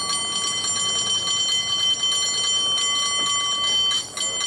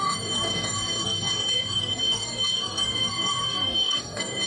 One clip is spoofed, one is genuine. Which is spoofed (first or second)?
second